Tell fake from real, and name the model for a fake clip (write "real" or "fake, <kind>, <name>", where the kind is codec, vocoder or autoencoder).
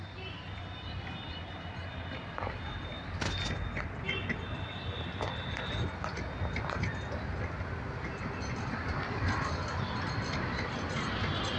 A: real